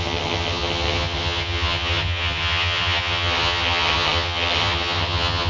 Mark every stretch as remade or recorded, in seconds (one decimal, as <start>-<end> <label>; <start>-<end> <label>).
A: 0.0-5.5 remade